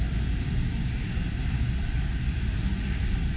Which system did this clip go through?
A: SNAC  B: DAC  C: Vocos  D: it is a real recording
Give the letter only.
D